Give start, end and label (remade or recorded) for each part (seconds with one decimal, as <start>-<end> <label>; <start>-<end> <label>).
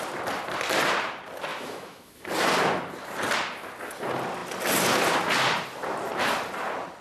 0.0-1.5 recorded; 1.5-2.3 remade; 2.3-7.0 recorded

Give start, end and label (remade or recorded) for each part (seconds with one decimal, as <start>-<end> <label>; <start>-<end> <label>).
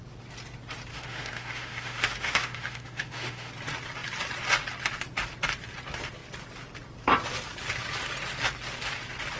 0.0-0.9 recorded; 0.9-3.5 remade; 3.5-9.4 recorded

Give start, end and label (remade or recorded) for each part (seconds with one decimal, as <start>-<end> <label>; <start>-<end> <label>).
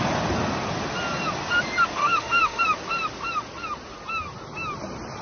0.0-2.0 recorded; 2.0-2.6 remade; 2.6-5.2 recorded